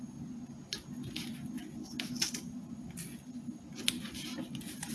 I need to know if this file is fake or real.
real